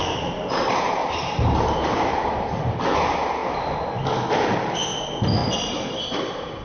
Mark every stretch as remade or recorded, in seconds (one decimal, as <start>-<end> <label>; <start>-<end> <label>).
0.0-2.3 remade; 2.3-5.4 recorded; 5.4-6.6 remade